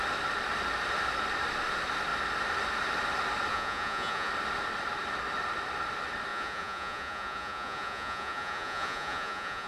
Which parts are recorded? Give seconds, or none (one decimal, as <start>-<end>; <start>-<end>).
0.0-3.5; 4.3-6.3

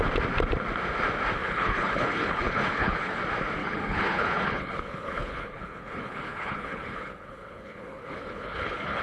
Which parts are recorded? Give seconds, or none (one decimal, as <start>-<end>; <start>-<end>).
0.0-1.4; 3.2-3.6

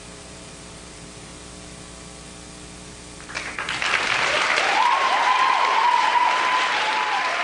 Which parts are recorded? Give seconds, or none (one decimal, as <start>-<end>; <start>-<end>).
1.3-4.0

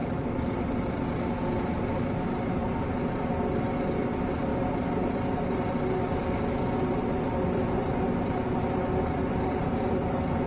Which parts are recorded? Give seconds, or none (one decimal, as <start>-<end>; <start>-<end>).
1.0-10.5

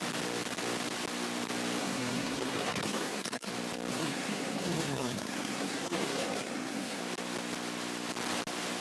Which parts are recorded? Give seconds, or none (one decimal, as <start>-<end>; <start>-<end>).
0.0-1.8; 3.5-3.9; 7.0-8.8

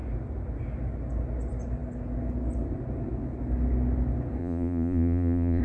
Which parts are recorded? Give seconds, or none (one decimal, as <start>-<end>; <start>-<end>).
0.0-4.4